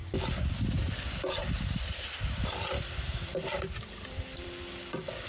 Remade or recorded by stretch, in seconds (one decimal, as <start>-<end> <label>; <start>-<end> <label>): 0.0-1.4 recorded; 1.4-4.6 remade; 4.6-5.3 recorded